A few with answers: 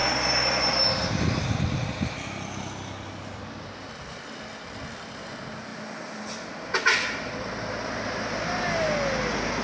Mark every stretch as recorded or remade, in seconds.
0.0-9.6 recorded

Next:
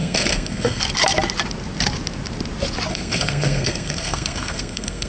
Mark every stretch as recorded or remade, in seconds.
0.0-0.8 remade; 0.8-2.9 recorded; 2.9-5.1 remade

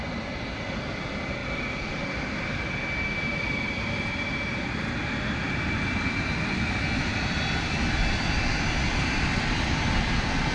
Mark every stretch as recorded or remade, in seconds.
0.0-10.5 recorded

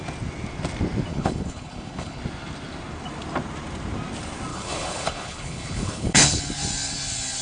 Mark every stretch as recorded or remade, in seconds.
0.0-1.1 recorded; 1.1-2.2 remade; 2.2-4.5 recorded; 4.5-6.4 remade; 6.4-7.4 recorded

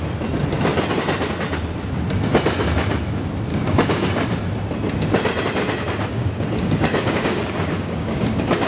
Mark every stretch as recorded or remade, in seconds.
0.0-3.5 recorded; 3.5-4.1 remade; 4.1-6.1 recorded; 6.1-8.7 remade

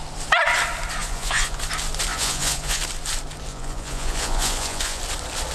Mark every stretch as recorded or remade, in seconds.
0.0-1.0 recorded; 1.0-1.6 remade; 1.6-2.1 recorded; 2.1-2.8 remade; 2.8-3.5 recorded; 3.5-5.0 remade; 5.0-5.5 recorded

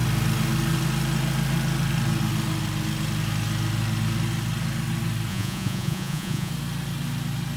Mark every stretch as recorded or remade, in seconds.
0.0-5.3 recorded; 5.3-6.5 remade; 6.5-7.6 recorded

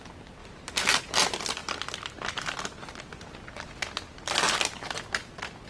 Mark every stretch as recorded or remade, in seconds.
0.0-5.7 recorded